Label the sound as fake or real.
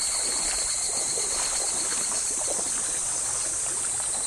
real